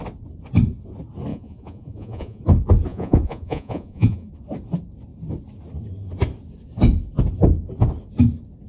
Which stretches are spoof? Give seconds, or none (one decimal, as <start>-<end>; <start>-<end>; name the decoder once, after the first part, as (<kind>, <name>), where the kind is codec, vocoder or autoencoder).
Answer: 1.3-2.4 (vocoder, Vocos); 2.9-4.3